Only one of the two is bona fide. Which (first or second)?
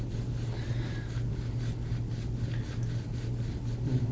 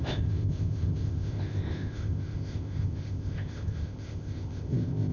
first